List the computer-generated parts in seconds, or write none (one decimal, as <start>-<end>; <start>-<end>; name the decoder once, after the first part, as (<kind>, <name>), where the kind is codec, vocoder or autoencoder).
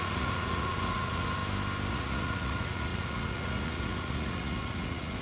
0.0-1.4 (vocoder, Vocos); 1.9-5.2